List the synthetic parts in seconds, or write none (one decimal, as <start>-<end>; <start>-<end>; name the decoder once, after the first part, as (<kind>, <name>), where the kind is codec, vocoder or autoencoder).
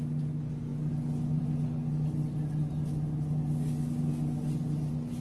none